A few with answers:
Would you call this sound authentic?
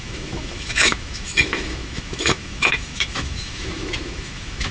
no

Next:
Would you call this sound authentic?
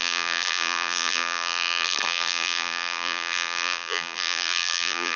no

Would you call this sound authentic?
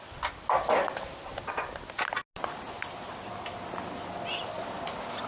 yes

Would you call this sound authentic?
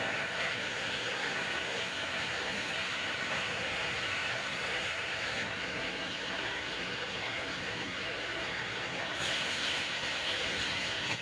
no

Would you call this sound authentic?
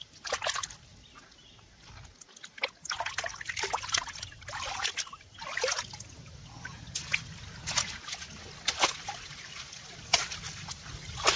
yes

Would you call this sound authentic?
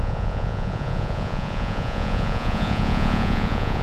no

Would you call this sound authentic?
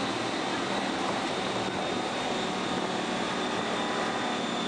yes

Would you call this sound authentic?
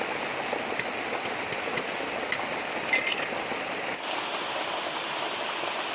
yes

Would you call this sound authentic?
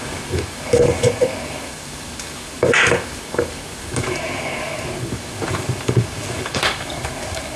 no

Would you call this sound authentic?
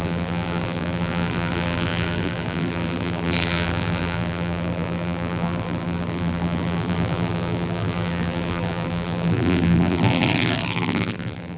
no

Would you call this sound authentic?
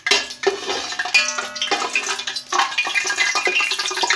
yes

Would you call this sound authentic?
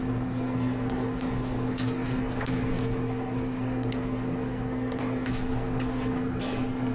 no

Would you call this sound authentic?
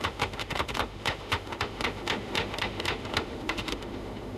no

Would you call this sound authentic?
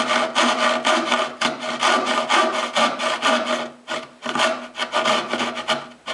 yes